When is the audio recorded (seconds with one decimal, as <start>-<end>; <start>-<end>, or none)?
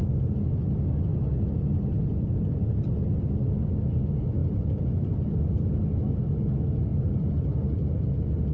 0.0-1.1; 3.0-4.4; 6.3-6.9; 7.4-8.5